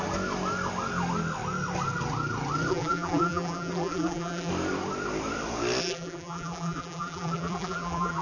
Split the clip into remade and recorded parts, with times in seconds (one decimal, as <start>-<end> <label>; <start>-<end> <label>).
0.0-2.7 recorded; 2.7-4.5 remade; 4.5-5.8 recorded; 5.8-8.2 remade